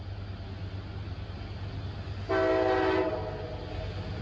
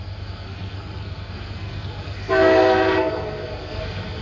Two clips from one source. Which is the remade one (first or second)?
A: second